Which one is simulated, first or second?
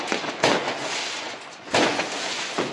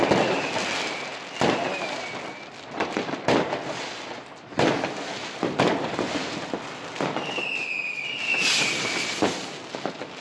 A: first